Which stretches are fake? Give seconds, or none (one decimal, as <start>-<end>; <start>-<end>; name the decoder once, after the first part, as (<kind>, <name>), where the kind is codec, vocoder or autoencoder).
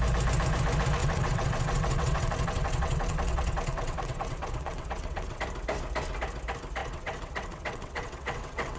1.0-5.4 (vocoder, WaveNeXt); 6.8-8.8